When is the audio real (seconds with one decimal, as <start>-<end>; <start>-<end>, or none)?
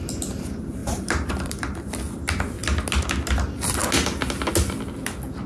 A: 0.0-0.8; 1.9-5.5